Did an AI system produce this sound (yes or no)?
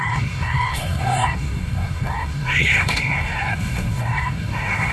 yes